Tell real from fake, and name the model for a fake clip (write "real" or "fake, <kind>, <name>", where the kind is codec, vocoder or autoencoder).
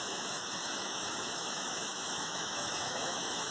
fake, autoencoder, DAC-VAE